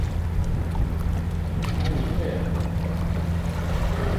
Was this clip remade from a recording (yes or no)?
no